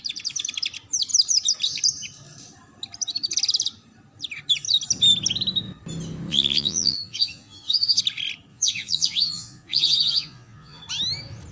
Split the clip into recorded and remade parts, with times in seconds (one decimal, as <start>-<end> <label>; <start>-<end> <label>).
0.0-6.3 recorded; 6.3-8.0 remade; 8.0-8.5 recorded; 8.5-10.8 remade; 10.8-11.5 recorded